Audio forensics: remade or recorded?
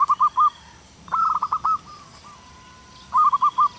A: recorded